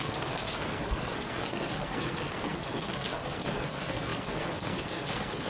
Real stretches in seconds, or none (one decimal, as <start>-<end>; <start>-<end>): none